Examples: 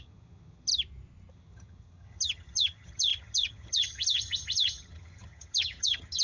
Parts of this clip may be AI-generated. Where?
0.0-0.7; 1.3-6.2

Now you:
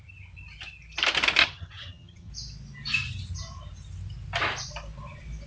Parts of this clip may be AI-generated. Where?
1.4-2.3

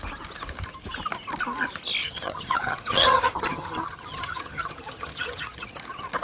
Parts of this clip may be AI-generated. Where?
2.0-5.7

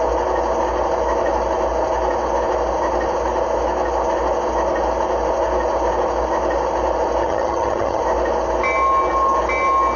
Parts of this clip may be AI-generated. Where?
7.2-8.0

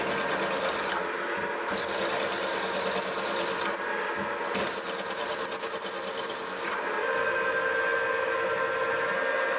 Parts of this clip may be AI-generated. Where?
none

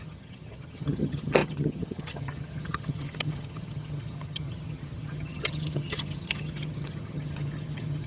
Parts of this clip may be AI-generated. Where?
0.0-8.1

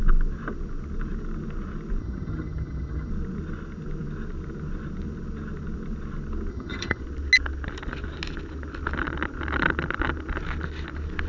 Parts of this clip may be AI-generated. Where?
2.0-3.1; 6.5-7.0